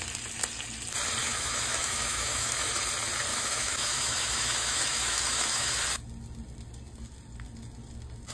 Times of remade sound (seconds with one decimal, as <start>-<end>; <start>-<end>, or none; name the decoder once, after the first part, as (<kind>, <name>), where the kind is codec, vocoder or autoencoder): 1.2-2.7 (autoencoder, DAC-VAE); 3.3-5.8